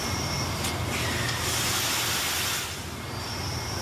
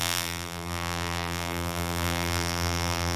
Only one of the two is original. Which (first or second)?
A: first